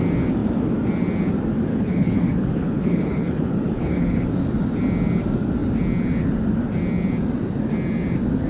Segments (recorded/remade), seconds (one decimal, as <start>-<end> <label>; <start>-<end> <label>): 0.0-1.7 recorded; 1.7-4.2 remade; 4.2-8.5 recorded